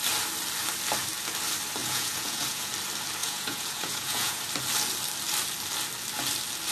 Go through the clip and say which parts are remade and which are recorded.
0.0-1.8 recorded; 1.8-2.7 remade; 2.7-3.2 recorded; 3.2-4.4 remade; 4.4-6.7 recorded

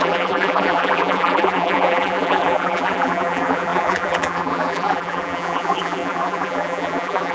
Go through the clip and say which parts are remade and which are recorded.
0.0-7.3 remade